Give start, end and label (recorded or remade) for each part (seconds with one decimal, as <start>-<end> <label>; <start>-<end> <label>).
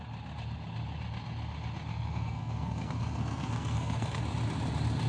0.0-1.9 recorded; 1.9-4.2 remade; 4.2-5.1 recorded